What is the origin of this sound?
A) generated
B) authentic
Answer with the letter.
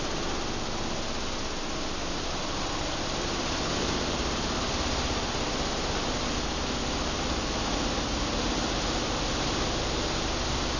B